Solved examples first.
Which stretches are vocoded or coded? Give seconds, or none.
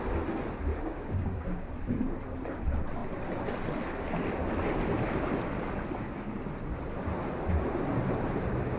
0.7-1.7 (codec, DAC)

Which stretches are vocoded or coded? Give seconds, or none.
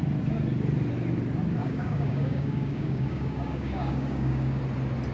1.6-4.6 (codec, DAC)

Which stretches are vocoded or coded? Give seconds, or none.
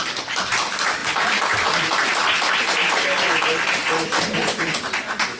none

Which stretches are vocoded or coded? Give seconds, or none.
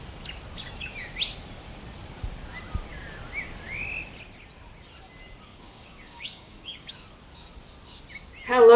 5.5-6.9 (codec, DAC)